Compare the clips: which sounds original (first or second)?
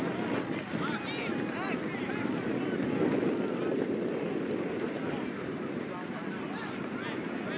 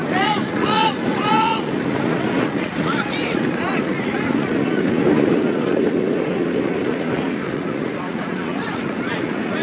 first